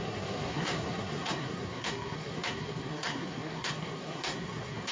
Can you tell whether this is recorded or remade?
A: remade